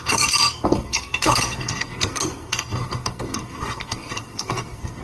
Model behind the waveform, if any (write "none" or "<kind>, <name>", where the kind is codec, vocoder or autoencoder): codec, SNAC